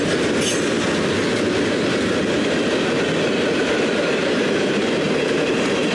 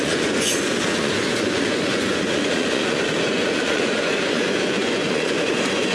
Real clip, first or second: first